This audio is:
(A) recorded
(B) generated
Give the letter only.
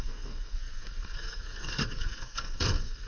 B